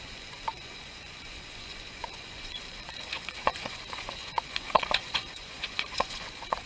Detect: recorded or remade remade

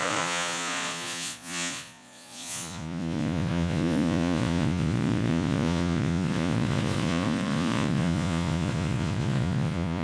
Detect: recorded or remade remade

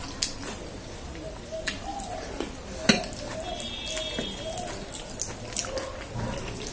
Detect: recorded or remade recorded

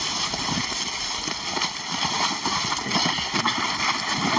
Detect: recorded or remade remade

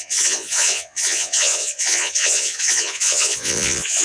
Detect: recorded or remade remade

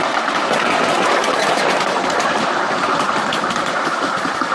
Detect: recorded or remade recorded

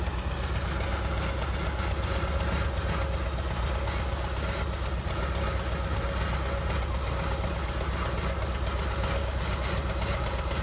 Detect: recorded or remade recorded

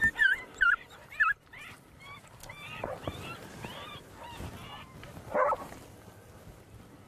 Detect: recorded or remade remade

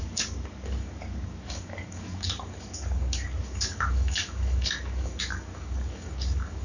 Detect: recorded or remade remade